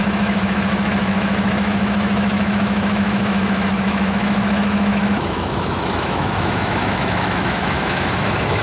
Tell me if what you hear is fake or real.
fake